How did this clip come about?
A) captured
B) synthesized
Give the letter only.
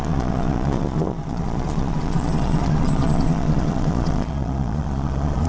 B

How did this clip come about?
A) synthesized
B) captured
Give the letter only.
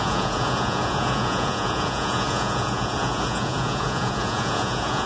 A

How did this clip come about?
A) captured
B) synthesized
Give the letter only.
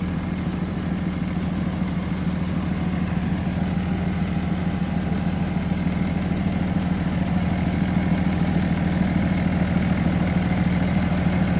A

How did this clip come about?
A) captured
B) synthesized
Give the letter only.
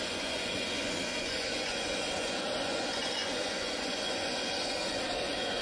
B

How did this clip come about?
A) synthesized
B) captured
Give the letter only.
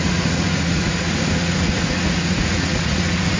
A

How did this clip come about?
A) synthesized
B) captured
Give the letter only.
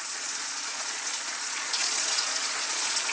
A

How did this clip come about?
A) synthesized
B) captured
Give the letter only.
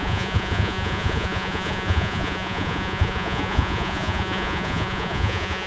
A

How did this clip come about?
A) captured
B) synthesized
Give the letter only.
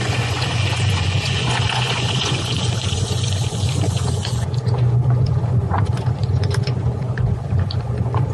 B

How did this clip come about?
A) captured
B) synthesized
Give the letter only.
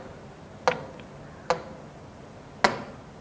A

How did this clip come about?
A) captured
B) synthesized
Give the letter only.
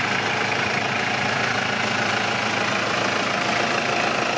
A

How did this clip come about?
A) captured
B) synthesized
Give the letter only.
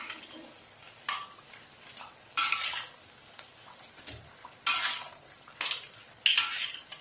A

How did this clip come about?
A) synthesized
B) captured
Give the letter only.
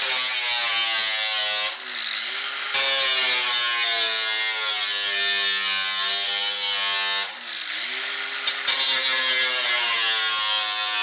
B